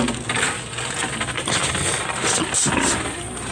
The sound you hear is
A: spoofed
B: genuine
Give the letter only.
B